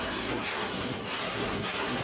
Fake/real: fake